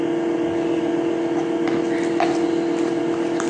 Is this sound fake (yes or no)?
no